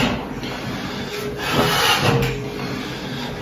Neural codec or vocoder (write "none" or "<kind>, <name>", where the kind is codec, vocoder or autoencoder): none